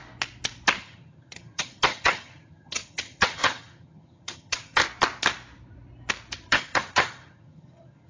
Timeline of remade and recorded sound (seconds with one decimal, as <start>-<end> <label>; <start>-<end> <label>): 0.0-0.8 recorded; 0.8-4.8 remade; 4.8-6.5 recorded; 6.5-8.1 remade